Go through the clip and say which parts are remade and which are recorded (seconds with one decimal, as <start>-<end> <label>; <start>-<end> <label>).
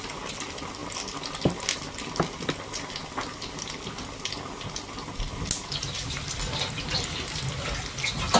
0.0-8.4 recorded